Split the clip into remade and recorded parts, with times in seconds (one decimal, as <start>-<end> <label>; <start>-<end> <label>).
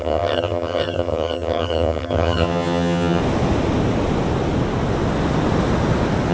0.0-3.2 remade; 3.2-6.3 recorded